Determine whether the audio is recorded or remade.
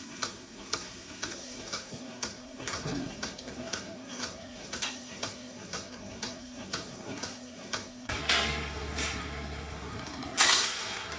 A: remade